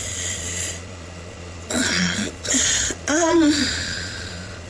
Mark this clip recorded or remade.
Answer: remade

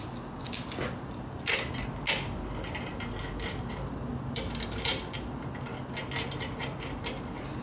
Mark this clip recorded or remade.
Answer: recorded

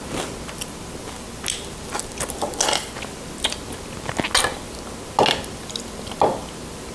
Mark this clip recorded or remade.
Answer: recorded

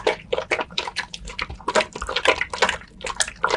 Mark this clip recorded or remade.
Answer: recorded